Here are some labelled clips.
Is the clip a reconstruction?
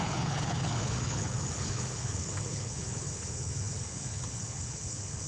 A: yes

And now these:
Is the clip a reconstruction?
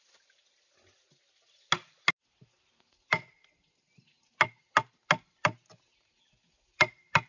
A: no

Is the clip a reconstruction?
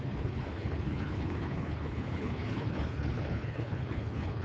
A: yes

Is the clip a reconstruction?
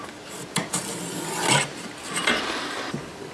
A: no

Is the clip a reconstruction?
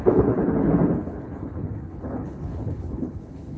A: yes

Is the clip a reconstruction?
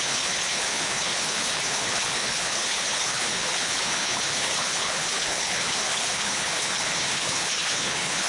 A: yes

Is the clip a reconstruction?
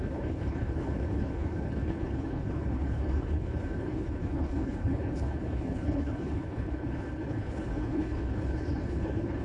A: yes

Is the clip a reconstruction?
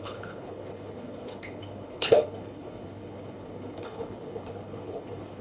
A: yes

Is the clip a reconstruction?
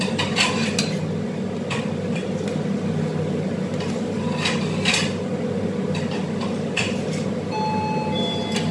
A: no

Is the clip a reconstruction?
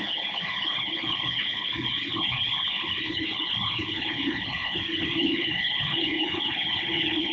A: yes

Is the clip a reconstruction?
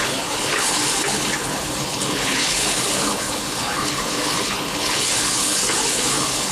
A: yes